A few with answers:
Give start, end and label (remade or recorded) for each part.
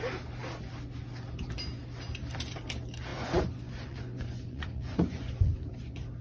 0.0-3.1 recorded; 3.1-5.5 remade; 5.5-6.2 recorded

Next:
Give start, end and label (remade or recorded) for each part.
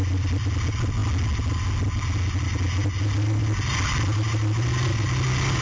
0.0-5.6 recorded